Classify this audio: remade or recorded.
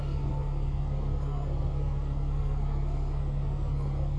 remade